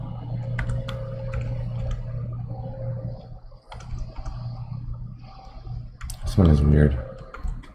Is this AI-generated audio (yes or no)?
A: no